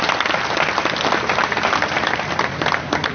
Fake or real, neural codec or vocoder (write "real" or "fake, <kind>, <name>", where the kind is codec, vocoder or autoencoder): real